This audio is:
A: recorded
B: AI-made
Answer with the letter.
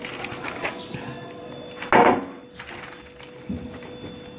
A